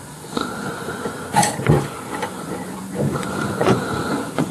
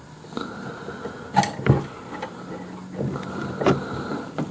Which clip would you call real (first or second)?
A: second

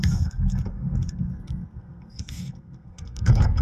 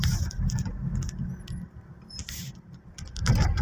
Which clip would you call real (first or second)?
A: second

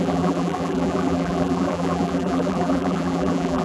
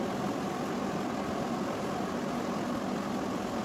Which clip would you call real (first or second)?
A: second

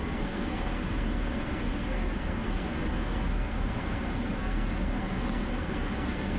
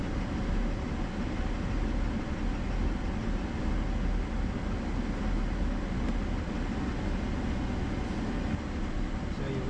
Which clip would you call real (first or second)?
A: second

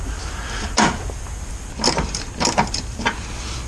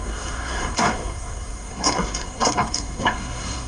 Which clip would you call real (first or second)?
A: first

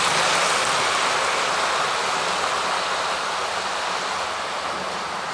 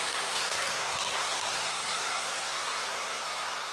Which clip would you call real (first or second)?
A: first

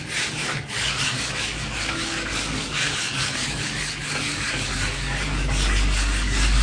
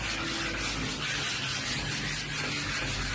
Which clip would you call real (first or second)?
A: second